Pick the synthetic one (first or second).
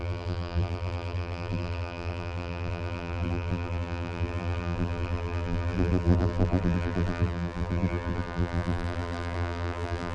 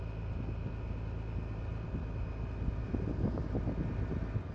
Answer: first